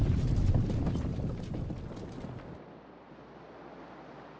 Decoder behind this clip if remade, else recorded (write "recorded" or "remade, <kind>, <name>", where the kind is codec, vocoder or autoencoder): recorded